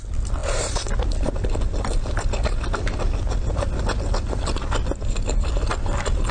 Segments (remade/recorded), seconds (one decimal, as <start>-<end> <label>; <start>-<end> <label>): 0.0-6.3 recorded

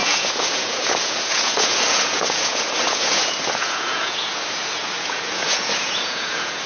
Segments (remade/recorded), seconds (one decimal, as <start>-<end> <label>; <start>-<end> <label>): 0.0-6.7 remade